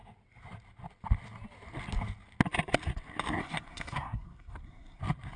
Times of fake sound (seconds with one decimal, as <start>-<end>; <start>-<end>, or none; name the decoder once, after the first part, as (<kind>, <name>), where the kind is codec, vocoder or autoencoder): 3.4-5.0 (codec, SNAC)